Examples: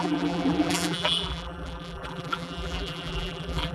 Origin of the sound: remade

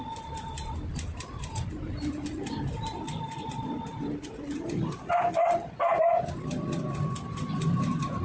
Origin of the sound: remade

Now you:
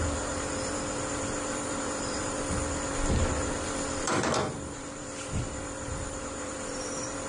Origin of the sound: remade